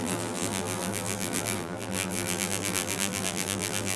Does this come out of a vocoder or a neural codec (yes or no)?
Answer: yes